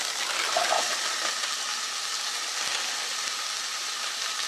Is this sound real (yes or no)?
yes